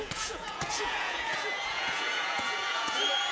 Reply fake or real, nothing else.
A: fake